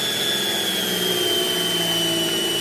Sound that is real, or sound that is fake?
real